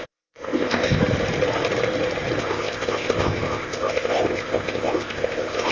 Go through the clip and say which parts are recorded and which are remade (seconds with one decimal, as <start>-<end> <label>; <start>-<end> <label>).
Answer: 0.0-1.0 remade; 1.0-2.4 recorded; 2.4-5.7 remade